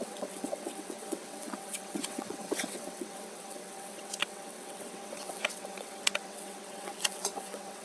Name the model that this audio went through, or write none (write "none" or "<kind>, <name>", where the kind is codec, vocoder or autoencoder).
vocoder, WaveNeXt